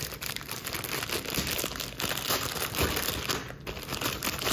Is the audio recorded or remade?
recorded